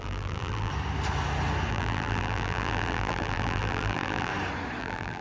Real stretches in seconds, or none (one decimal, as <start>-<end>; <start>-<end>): 0.7-1.7; 4.3-4.8